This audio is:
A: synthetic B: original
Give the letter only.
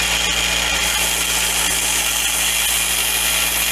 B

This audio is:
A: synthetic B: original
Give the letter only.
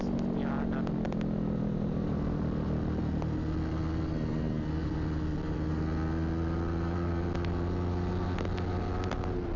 B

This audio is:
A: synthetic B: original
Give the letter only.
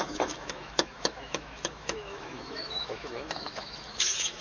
A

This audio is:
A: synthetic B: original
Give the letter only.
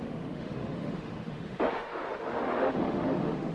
A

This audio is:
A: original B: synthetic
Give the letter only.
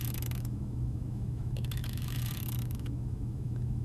B